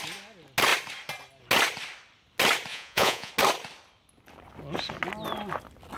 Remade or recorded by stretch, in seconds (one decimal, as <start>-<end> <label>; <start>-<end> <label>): 0.0-2.7 recorded; 2.7-3.3 remade; 3.3-6.0 recorded